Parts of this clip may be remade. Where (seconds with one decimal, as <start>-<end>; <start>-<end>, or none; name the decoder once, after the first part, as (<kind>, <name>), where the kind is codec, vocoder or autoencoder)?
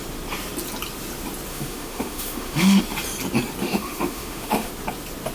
1.5-2.8 (autoencoder, DAC-VAE); 3.6-4.7